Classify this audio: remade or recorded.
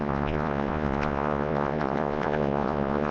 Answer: remade